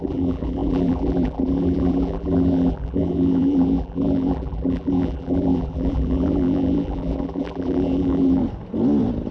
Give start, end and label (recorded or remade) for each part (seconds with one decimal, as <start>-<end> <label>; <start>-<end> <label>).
0.0-8.4 remade; 8.4-9.3 recorded